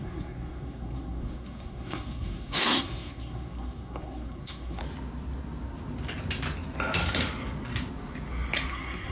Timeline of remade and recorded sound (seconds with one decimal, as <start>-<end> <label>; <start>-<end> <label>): 0.0-4.8 remade; 4.8-8.7 recorded; 8.7-9.1 remade